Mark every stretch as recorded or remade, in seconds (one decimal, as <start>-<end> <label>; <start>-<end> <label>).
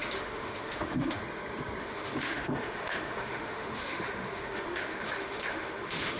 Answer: 0.0-1.2 remade; 1.2-1.8 recorded; 1.8-6.2 remade